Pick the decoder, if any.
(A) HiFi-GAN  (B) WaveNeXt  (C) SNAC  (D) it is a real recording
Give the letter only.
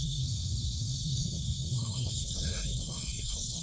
C